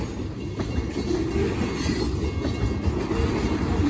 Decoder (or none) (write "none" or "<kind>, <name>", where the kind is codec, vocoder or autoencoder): none